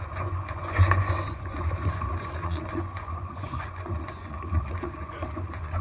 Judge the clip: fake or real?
fake